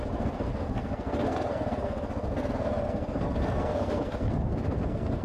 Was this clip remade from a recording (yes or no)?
yes